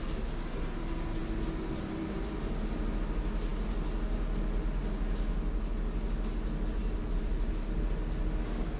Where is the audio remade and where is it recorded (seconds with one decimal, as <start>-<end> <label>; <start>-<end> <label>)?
0.0-6.8 recorded; 6.8-7.8 remade; 7.8-8.8 recorded